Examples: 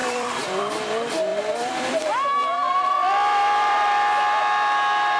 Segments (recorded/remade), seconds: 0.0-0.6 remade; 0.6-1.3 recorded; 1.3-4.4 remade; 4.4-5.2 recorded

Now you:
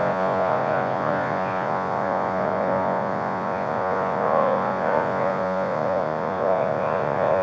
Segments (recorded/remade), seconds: 0.0-7.4 remade